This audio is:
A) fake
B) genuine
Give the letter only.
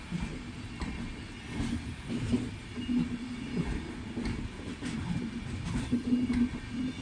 B